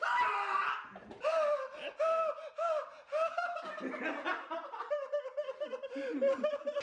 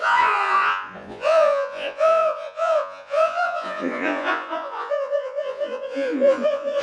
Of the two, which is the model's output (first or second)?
second